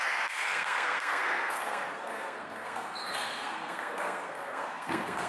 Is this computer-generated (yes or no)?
yes